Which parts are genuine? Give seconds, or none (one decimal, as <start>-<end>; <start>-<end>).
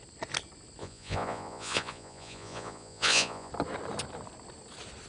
0.0-0.8; 3.5-5.1